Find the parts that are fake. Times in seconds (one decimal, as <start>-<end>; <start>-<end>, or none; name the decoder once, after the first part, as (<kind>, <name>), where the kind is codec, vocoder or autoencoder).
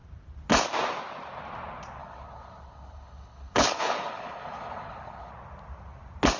2.0-5.3 (codec, HILCodec)